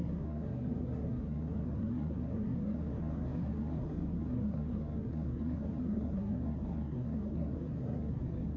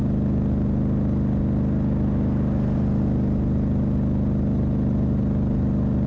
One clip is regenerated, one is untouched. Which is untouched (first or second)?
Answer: second